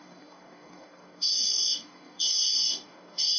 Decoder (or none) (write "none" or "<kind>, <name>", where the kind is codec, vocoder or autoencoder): codec, DAC